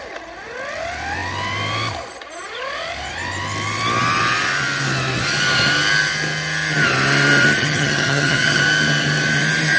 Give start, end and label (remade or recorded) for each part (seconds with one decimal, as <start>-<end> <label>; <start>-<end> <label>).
0.0-7.6 recorded; 7.6-8.6 remade; 8.6-9.8 recorded